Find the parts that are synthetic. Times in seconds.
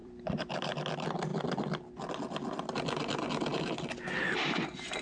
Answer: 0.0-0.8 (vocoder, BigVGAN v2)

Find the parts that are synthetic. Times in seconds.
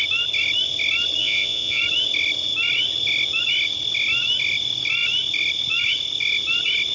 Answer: 1.2-1.8 (vocoder, Vocos)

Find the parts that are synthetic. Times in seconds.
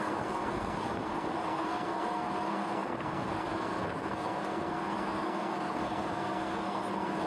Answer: 0.0-7.3 (codec, SNAC)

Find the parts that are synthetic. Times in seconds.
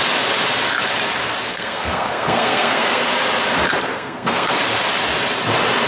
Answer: 1.5-3.1 (codec, SNAC); 3.9-4.6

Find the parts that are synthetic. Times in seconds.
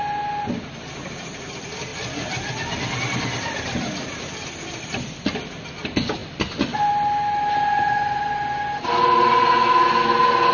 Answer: none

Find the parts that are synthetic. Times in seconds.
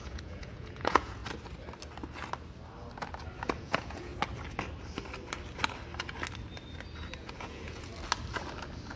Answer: 0.0-1.2 (vocoder, Vocos); 3.6-4.1; 7.2-7.9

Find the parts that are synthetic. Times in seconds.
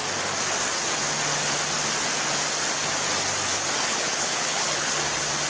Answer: 3.9-4.9 (codec, HILCodec)